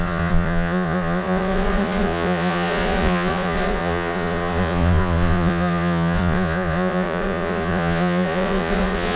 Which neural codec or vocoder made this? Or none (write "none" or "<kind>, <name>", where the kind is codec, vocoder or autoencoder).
vocoder, Vocos